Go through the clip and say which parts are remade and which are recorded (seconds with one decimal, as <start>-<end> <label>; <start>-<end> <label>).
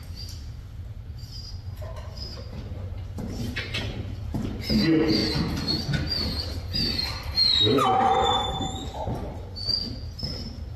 0.0-7.0 recorded; 7.0-8.9 remade; 8.9-10.8 recorded